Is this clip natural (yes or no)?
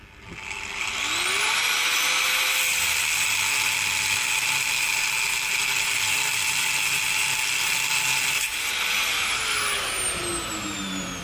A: yes